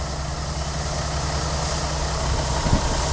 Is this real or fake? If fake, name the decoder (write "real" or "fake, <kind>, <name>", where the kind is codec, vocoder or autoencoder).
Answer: real